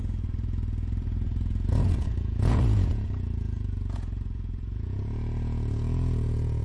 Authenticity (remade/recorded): remade